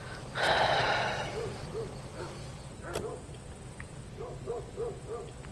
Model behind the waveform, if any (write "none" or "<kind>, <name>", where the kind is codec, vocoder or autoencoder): none